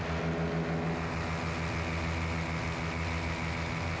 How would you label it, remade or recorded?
recorded